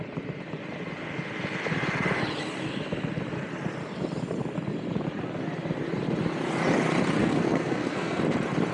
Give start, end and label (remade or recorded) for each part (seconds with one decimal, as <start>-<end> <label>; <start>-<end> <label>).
0.0-7.2 recorded; 7.2-8.2 remade; 8.2-8.7 recorded